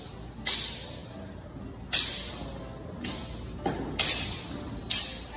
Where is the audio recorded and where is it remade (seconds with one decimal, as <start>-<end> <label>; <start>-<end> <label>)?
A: 0.0-5.4 recorded